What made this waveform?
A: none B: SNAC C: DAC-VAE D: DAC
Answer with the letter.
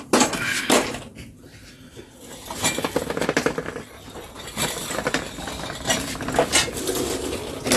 A